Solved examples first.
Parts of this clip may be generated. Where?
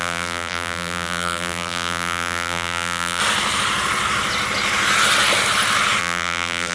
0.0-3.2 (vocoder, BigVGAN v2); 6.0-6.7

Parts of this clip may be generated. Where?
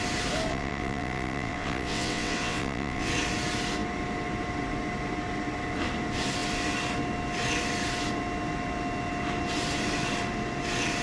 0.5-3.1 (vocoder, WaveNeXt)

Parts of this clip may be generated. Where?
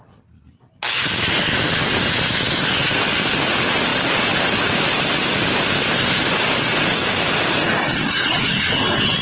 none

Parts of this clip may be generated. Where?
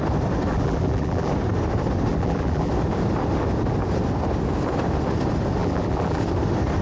0.5-1.3 (vocoder, BigVGAN v2); 2.1-2.7; 5.6-6.2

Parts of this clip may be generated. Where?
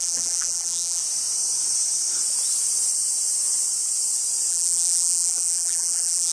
0.0-1.0 (vocoder, BigVGAN v2); 4.5-6.3